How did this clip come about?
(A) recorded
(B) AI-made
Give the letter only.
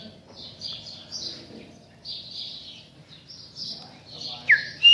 A